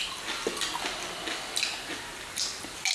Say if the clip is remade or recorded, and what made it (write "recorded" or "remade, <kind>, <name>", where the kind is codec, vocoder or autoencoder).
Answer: recorded